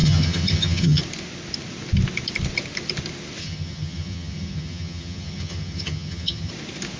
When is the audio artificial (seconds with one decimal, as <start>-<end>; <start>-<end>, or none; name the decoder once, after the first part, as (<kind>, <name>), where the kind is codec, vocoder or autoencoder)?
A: 0.0-1.0 (vocoder, HiFi-GAN); 3.4-6.5